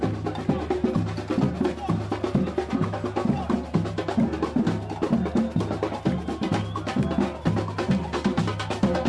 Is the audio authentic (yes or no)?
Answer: yes